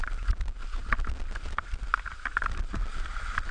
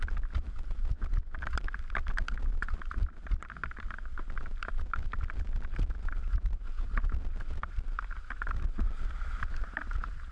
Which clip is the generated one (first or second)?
first